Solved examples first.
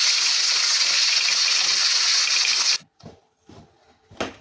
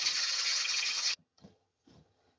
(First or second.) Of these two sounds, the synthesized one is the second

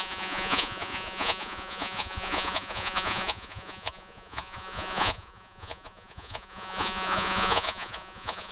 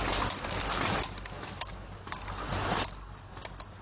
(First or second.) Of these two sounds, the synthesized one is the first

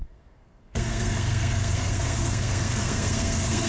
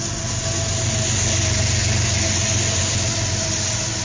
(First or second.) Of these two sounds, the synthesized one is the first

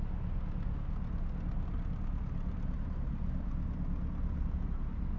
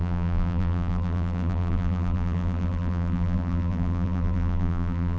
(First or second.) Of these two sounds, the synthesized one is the second